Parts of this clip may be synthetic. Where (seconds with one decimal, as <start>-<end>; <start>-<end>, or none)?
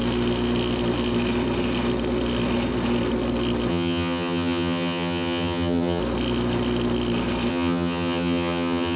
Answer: 3.7-6.0; 7.5-9.0